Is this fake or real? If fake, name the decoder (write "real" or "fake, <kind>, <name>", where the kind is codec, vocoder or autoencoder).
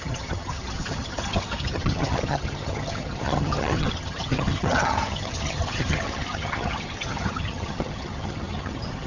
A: fake, vocoder, HiFi-GAN